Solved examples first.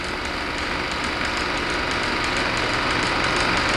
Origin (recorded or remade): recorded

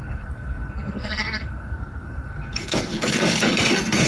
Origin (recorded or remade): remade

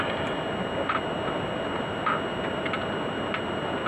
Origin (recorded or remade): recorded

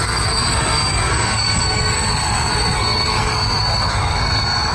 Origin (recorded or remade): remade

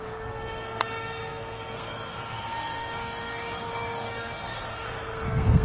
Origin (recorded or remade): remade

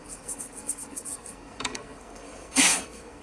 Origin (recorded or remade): remade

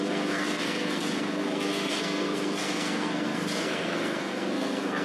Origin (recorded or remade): remade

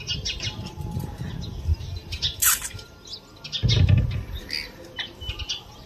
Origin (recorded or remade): recorded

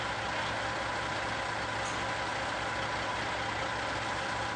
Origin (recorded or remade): recorded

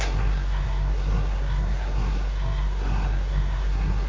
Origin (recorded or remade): remade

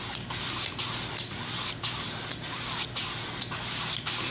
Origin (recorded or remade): recorded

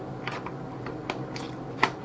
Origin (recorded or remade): recorded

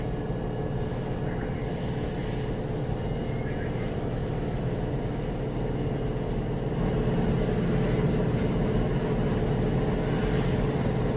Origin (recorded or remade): recorded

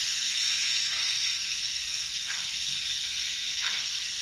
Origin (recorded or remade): remade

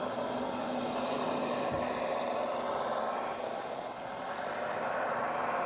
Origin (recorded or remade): recorded